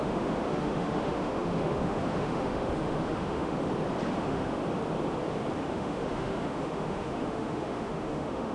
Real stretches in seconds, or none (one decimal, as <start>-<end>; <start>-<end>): 3.6-4.1; 4.6-5.6